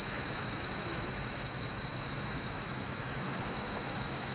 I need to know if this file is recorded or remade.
remade